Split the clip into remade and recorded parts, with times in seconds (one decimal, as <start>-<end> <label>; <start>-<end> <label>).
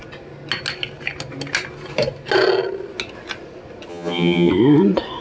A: 0.0-3.9 recorded; 3.9-4.5 remade; 4.5-5.2 recorded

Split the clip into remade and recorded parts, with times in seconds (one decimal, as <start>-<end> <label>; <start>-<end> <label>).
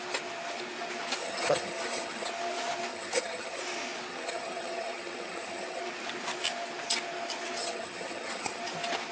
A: 0.0-1.2 recorded; 1.2-2.3 remade; 2.3-2.9 recorded; 2.9-3.6 remade; 3.6-4.1 recorded; 4.1-5.8 remade; 5.8-7.6 recorded; 7.6-8.6 remade; 8.6-9.1 recorded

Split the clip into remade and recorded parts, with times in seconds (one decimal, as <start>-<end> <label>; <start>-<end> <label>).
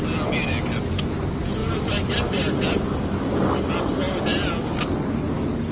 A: 0.0-5.7 recorded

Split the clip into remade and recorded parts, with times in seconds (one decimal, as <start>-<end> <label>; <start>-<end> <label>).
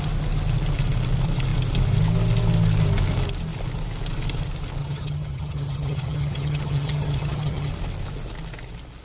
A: 0.0-4.8 recorded; 4.8-7.7 remade; 7.7-9.0 recorded